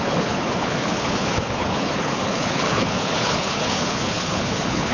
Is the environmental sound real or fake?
fake